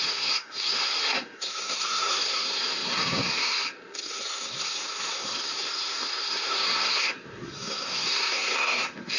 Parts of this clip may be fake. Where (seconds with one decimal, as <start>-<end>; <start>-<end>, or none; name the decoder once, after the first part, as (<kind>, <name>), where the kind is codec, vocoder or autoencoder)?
0.0-9.2 (codec, SNAC)